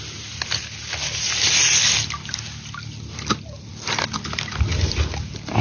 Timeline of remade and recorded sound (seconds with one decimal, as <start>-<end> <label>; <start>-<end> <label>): 0.0-5.6 recorded